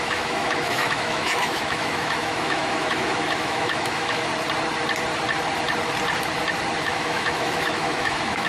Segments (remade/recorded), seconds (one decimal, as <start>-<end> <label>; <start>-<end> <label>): 0.0-4.3 remade; 4.3-6.8 recorded; 6.8-8.5 remade